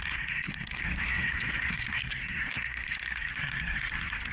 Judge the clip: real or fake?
fake